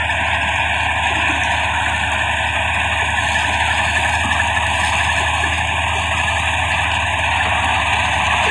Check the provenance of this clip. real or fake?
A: real